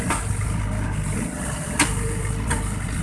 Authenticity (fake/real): real